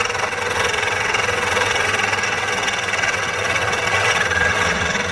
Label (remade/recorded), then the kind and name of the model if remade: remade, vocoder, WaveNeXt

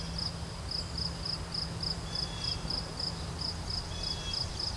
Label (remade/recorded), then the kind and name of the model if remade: recorded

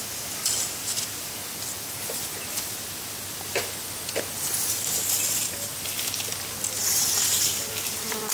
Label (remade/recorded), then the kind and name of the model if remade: recorded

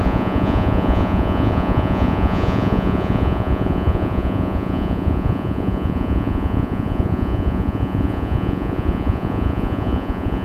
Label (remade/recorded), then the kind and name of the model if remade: remade, vocoder, Vocos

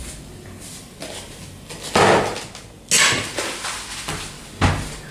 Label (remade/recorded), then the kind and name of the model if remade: recorded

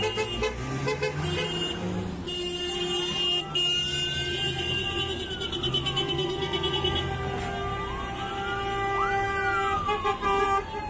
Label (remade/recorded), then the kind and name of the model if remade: recorded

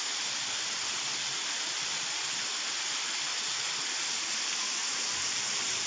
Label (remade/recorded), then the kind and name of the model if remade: recorded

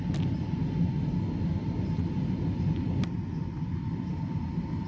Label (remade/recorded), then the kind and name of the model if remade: recorded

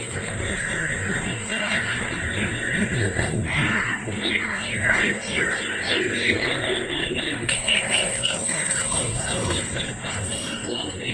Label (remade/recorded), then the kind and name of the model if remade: remade, codec, SNAC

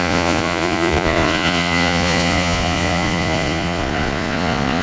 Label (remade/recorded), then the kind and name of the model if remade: remade, vocoder, Vocos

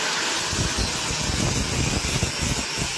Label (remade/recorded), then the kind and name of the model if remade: recorded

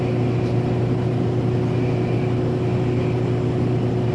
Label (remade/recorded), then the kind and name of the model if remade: recorded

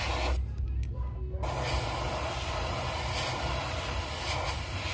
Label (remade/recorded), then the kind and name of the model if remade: recorded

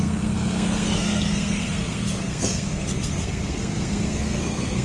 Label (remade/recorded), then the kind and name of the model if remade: remade, codec, SNAC